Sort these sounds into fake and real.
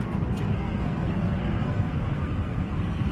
fake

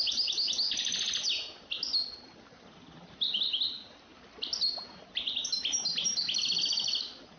real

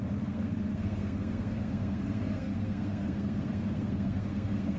fake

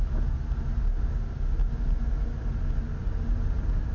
real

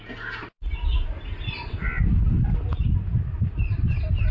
real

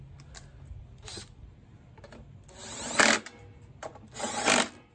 real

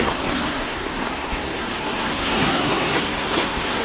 fake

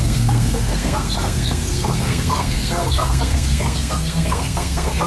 fake